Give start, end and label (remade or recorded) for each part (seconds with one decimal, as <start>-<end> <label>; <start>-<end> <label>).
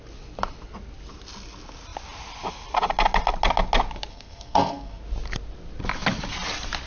0.0-4.1 recorded; 4.1-5.0 remade; 5.0-6.9 recorded